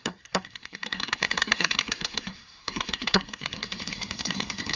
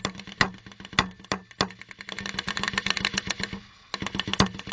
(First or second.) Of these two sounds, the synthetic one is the first